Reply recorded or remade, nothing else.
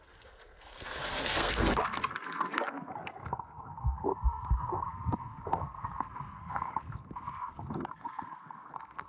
remade